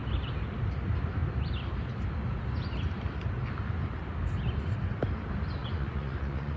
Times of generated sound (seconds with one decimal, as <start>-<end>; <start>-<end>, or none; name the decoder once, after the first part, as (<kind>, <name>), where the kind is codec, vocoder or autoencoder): 5.6-6.6 (vocoder, Vocos)